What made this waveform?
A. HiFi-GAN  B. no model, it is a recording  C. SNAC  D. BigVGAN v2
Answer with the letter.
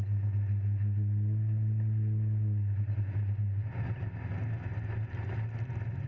B